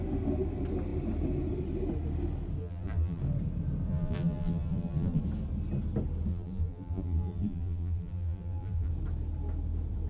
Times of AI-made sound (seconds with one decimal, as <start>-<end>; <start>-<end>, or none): 2.6-3.2; 3.9-5.2; 6.3-8.9